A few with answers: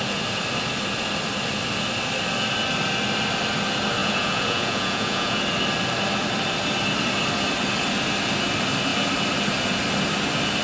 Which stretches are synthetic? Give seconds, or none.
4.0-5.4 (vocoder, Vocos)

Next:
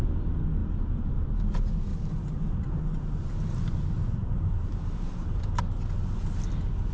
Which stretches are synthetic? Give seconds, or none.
1.9-2.8 (vocoder, BigVGAN v2); 4.2-5.6

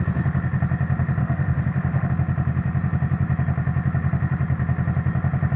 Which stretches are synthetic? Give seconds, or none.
1.2-2.1 (codec, SNAC)